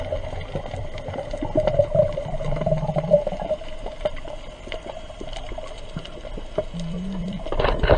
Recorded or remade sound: remade